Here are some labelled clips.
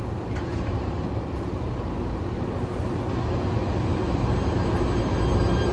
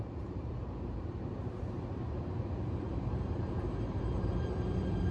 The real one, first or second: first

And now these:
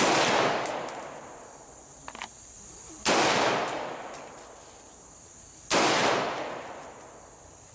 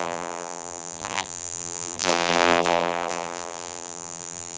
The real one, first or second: first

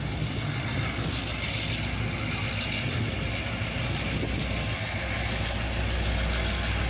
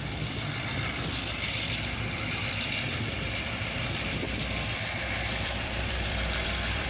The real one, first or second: first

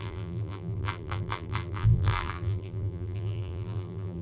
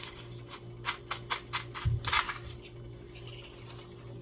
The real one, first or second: second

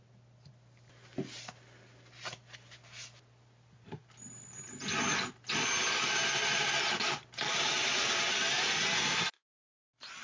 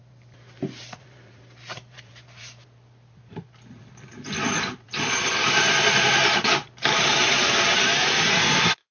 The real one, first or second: first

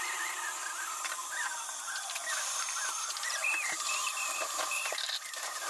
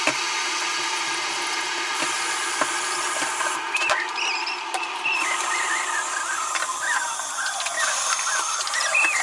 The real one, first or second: second